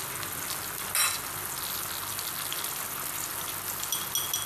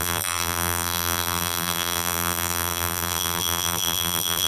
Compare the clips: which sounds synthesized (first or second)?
second